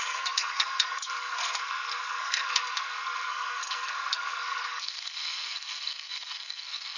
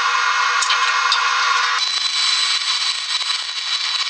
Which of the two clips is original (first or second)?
second